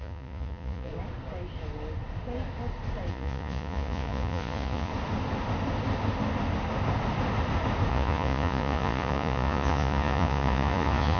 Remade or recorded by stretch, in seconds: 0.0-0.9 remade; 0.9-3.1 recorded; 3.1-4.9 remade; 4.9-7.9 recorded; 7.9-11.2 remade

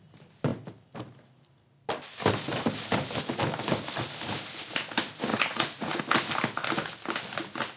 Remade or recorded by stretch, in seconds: 0.0-5.3 recorded; 5.3-6.0 remade; 6.0-7.8 recorded

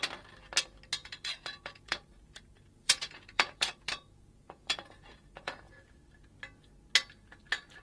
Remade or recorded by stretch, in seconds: 0.0-1.0 recorded; 1.0-5.7 remade; 5.7-7.8 recorded

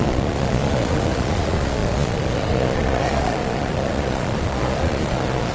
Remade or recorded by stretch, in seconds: 0.0-5.5 remade

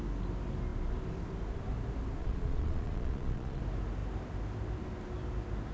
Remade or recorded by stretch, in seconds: 0.0-2.2 recorded; 2.2-3.6 remade; 3.6-5.7 recorded

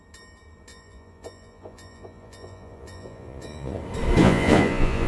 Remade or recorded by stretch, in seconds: 0.0-0.7 recorded; 0.7-3.8 remade; 3.8-4.2 recorded; 4.2-5.1 remade

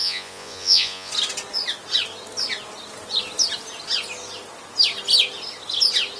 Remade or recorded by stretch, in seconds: 0.0-1.1 remade; 1.1-6.2 recorded

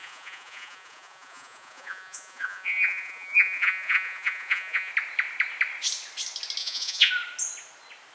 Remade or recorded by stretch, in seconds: 0.0-4.9 remade; 4.9-6.6 recorded; 6.6-7.1 remade; 7.1-8.1 recorded